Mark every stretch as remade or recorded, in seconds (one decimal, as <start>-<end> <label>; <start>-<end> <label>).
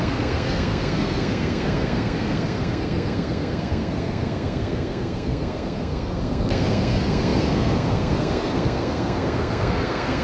0.0-10.2 remade